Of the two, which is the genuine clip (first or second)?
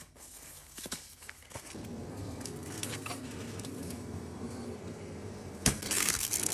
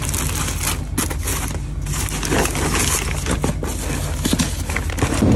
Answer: second